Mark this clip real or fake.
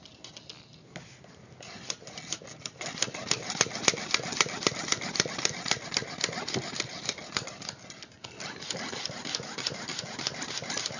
real